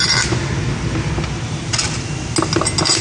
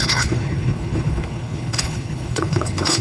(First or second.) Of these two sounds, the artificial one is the second